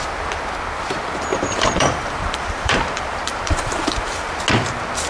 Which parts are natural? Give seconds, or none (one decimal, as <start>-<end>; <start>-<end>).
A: 0.0-1.3; 4.4-5.1

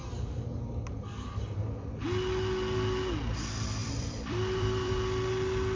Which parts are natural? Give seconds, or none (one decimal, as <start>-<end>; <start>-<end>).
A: 0.0-3.8; 4.9-5.8

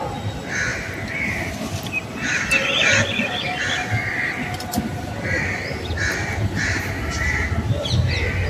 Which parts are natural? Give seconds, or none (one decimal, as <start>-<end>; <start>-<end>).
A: 0.0-8.5

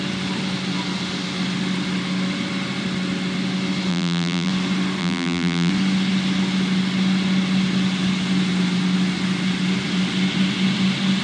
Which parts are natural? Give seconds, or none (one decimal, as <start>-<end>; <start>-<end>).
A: 0.0-3.9; 4.5-5.0; 5.7-11.2

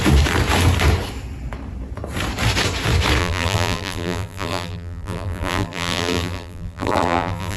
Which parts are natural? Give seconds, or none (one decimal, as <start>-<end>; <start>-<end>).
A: 0.0-3.2

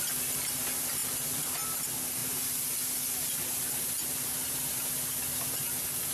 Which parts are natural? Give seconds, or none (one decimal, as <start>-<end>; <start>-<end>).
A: 0.0-1.0; 1.5-6.1

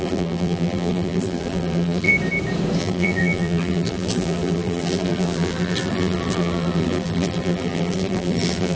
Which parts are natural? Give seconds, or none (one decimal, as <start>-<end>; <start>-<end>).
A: 2.1-2.8

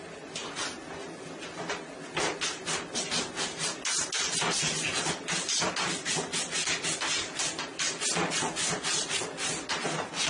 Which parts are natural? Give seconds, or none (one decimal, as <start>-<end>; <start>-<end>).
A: 0.0-10.3